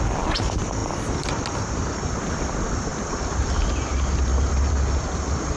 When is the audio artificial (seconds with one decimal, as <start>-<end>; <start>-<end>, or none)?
2.9-3.6; 4.3-5.6

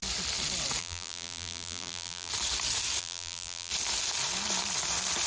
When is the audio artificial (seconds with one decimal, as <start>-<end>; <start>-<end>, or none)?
0.8-2.3; 3.0-3.7

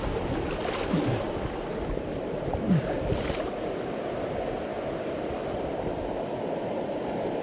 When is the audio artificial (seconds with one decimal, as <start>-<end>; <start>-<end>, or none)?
4.7-6.8

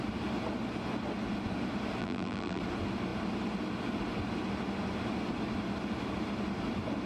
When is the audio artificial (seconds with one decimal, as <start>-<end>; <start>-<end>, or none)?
2.0-2.6

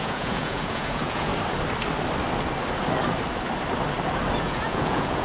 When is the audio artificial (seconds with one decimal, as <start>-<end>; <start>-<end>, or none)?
0.0-1.3; 4.4-5.2

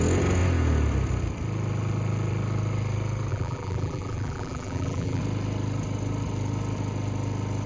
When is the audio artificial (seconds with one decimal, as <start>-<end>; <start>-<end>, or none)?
3.3-5.2

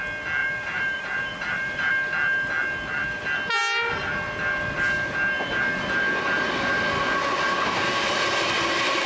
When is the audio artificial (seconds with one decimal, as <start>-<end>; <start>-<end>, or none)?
0.4-1.9